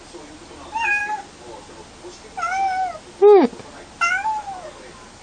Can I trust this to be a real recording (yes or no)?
yes